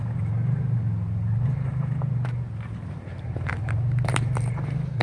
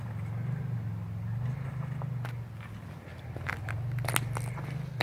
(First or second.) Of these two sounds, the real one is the second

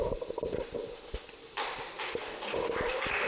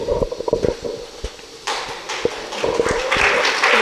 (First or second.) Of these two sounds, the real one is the second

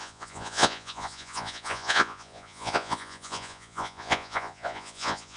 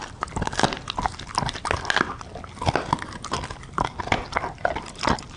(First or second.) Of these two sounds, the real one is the second